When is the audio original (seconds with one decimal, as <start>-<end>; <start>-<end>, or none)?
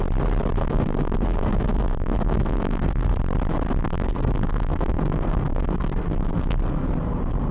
0.0-0.6; 3.2-3.8; 6.6-7.5